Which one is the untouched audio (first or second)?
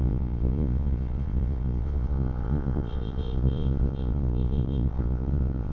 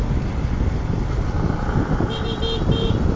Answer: second